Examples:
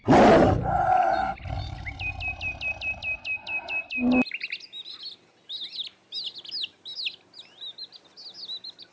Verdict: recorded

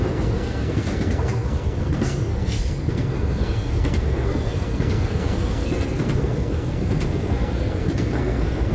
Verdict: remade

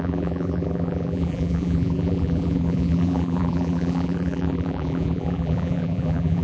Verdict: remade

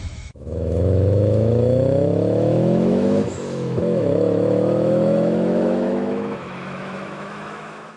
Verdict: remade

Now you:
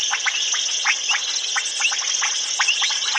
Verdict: recorded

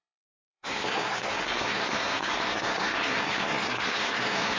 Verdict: remade